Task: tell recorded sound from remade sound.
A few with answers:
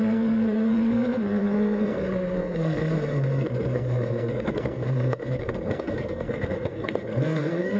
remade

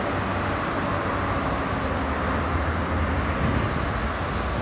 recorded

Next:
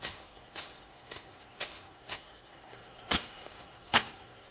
remade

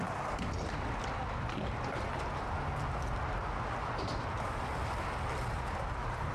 recorded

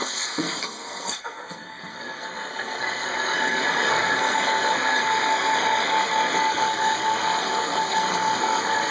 remade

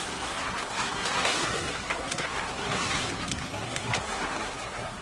remade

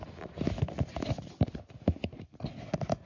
recorded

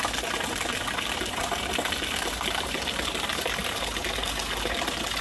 recorded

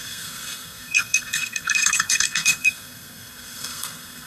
remade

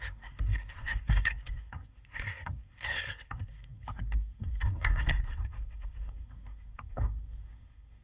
remade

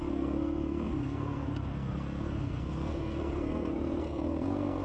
remade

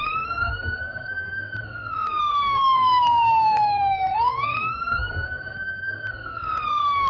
remade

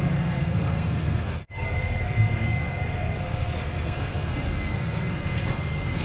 remade